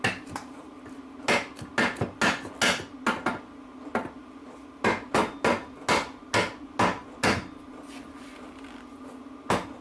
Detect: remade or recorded recorded